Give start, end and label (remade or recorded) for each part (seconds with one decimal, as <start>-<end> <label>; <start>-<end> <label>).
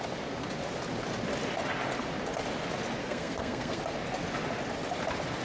0.0-3.0 recorded; 3.0-3.8 remade; 3.8-5.4 recorded